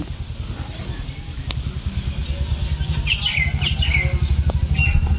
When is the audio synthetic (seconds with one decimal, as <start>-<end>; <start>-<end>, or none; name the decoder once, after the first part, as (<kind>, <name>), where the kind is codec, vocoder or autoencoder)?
none